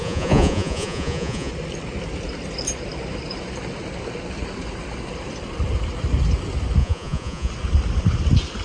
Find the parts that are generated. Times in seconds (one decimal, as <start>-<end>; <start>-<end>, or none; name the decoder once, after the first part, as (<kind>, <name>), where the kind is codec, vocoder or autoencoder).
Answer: 0.0-1.5 (vocoder, Vocos); 6.8-7.5